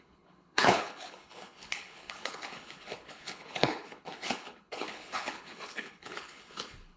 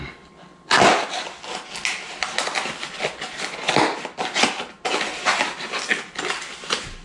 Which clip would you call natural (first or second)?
second